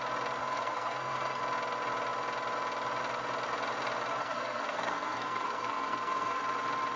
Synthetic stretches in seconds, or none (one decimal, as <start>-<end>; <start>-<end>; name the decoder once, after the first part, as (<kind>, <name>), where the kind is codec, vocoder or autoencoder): 0.4-1.4 (codec, SNAC); 4.2-6.4